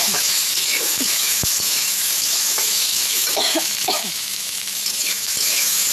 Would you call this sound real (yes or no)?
no